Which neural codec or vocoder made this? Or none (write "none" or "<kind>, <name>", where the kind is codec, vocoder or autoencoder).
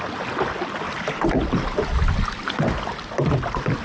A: none